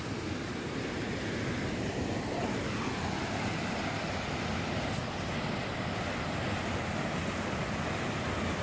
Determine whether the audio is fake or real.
real